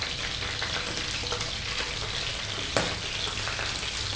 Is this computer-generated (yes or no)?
no